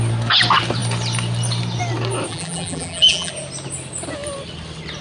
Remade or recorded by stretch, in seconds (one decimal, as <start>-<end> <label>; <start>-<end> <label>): 0.0-2.3 recorded; 2.3-3.3 remade; 3.3-5.0 recorded